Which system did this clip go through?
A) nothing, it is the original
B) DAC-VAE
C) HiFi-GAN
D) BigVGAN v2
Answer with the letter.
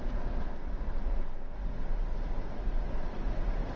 A